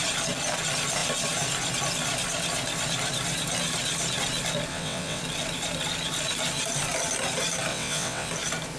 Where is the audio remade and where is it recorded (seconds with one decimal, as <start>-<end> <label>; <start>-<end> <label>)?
0.0-4.7 recorded; 4.7-5.2 remade; 5.2-7.7 recorded; 7.7-8.3 remade; 8.3-8.8 recorded